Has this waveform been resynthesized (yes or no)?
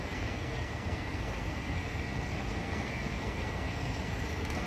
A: yes